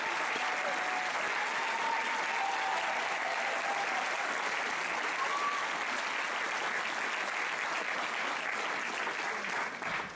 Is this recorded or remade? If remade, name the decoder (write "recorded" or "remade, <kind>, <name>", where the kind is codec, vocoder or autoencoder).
recorded